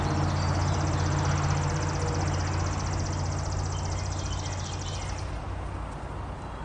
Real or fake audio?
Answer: real